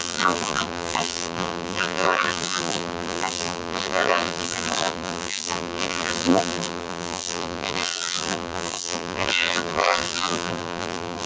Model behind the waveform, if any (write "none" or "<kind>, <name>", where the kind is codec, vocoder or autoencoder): vocoder, BigVGAN v2